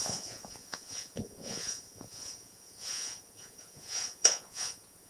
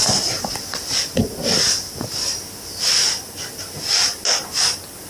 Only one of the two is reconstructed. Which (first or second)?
first